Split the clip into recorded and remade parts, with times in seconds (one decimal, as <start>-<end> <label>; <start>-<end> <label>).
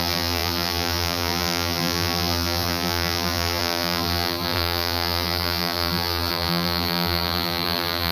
0.0-8.1 remade